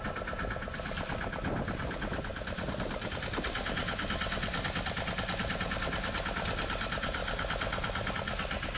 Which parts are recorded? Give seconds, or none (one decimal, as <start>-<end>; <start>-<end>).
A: 0.0-2.3; 3.1-8.8